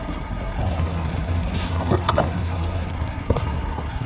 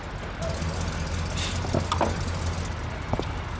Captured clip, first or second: second